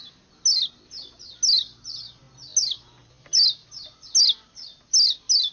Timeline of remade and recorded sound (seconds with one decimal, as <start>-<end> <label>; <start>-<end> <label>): 0.0-5.5 recorded